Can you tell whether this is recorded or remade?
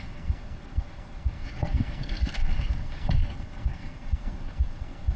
remade